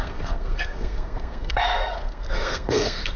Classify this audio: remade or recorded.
remade